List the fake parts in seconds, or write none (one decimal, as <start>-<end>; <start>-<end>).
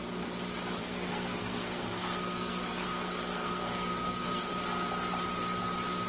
0.8-4.5